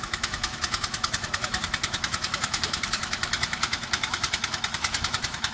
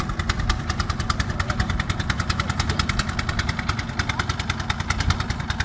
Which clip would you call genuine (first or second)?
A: second